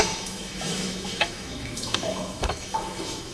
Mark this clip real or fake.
fake